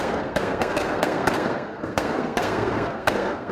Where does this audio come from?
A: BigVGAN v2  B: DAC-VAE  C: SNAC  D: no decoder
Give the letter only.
C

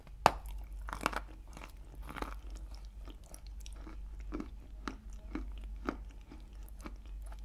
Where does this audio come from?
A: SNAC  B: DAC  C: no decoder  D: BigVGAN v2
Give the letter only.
C